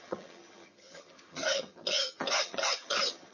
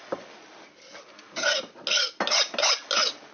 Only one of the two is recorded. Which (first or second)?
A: second